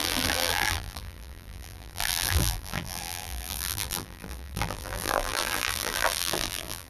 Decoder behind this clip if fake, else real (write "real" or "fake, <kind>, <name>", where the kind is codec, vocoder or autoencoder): fake, vocoder, BigVGAN v2